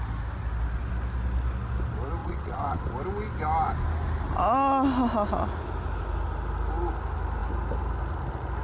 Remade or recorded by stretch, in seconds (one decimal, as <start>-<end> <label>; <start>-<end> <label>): 0.0-2.2 recorded; 2.2-2.8 remade; 2.8-8.6 recorded